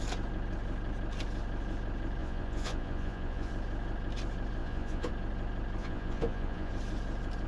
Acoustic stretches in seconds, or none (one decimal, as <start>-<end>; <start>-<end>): 0.0-2.2; 3.5-4.6; 5.1-5.8; 6.7-7.5